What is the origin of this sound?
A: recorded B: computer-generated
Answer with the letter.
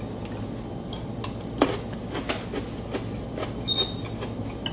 A